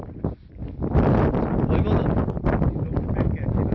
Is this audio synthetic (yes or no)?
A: no